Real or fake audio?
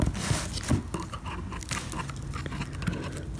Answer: real